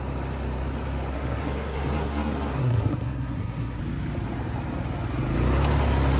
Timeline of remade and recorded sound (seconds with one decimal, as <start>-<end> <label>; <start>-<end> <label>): 0.0-1.1 recorded; 1.1-3.8 remade; 3.8-6.2 recorded

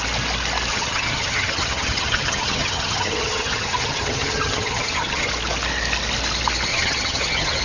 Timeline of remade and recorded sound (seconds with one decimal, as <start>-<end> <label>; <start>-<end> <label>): 0.0-0.7 recorded; 0.7-5.3 remade; 5.3-6.7 recorded; 6.7-7.6 remade